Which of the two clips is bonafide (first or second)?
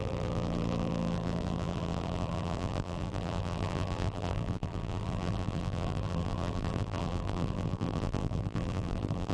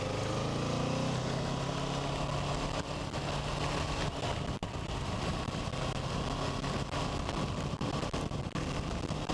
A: second